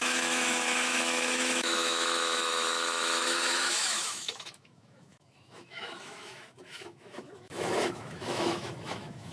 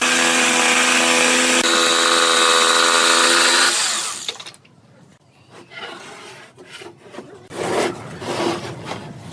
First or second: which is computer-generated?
first